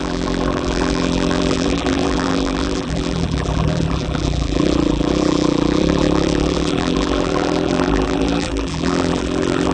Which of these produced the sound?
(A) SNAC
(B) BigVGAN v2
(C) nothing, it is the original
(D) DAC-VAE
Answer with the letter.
B